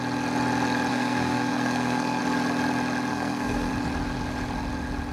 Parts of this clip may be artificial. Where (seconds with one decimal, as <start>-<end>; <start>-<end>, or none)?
0.9-2.2; 3.1-3.7

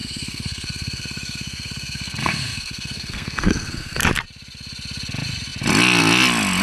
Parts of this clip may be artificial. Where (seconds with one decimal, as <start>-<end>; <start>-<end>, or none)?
0.0-4.0